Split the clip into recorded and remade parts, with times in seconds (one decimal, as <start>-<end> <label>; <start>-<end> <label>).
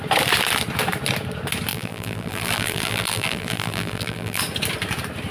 0.0-1.7 recorded; 1.7-4.4 remade; 4.4-5.3 recorded